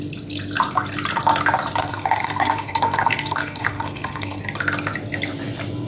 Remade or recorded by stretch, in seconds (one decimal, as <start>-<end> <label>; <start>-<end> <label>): 0.0-1.8 recorded; 1.8-4.4 remade; 4.4-5.9 recorded